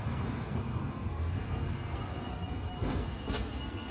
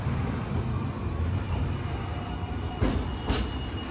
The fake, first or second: first